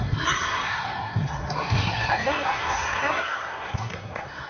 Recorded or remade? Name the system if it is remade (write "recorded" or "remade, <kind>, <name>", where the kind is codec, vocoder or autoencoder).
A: remade, codec, SNAC